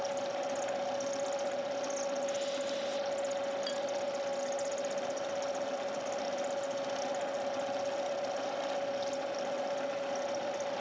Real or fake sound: real